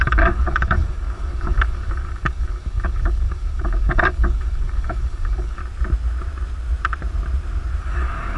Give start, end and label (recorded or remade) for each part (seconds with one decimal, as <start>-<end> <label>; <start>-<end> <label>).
0.0-5.6 remade; 5.6-7.8 recorded; 7.8-8.4 remade